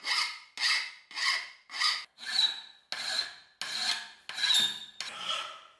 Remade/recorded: recorded